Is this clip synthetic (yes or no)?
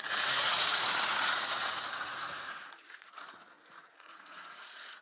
yes